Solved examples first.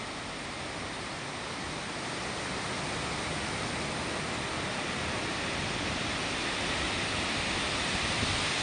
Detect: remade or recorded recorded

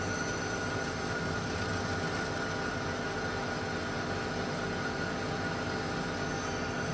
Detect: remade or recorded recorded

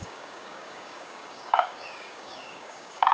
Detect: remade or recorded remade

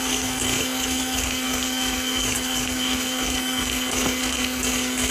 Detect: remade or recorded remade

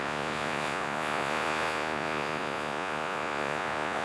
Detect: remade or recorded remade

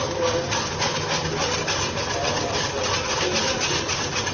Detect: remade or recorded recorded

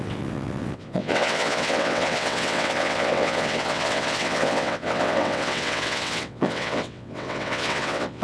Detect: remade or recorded remade